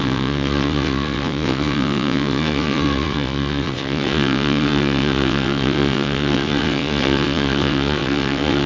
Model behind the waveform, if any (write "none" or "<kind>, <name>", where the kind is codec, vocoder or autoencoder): vocoder, WaveNeXt